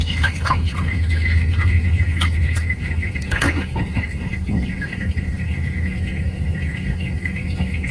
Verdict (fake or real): fake